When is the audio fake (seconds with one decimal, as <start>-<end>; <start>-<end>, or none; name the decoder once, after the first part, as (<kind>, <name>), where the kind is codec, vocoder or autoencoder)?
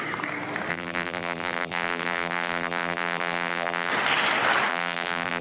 0.7-3.9 (vocoder, BigVGAN v2); 4.7-5.4